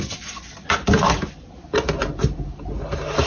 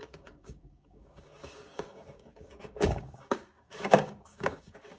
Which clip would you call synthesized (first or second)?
second